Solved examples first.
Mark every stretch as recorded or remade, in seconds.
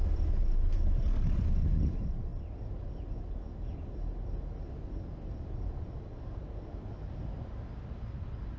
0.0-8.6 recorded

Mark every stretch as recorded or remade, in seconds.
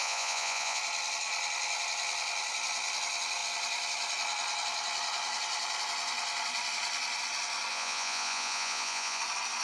0.0-0.8 remade; 0.8-7.7 recorded; 7.7-9.2 remade; 9.2-9.6 recorded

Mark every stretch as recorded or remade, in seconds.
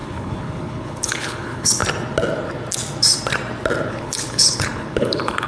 0.0-1.8 remade; 1.8-3.9 recorded; 3.9-5.5 remade